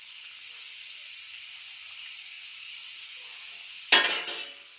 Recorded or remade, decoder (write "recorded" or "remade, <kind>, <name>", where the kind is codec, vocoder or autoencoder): recorded